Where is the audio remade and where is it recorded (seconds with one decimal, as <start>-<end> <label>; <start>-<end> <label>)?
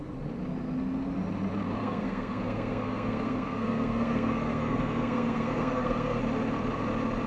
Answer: 0.0-1.8 recorded; 1.8-6.2 remade; 6.2-7.3 recorded